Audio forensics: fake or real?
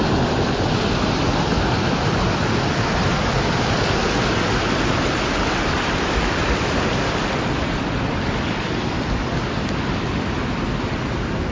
real